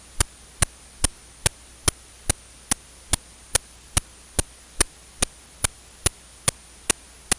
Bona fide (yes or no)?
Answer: yes